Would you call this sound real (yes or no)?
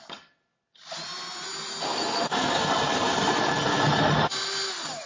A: yes